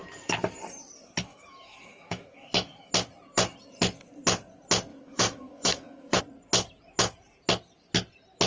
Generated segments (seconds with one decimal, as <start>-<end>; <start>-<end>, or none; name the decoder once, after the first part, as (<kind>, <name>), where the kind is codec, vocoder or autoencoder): 1.3-2.9 (autoencoder, DAC-VAE); 4.9-6.2